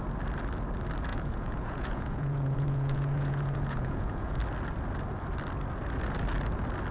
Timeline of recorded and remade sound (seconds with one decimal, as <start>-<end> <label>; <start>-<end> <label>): 0.0-1.1 recorded; 1.1-4.4 remade; 4.4-6.9 recorded